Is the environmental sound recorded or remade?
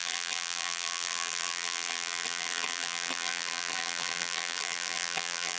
remade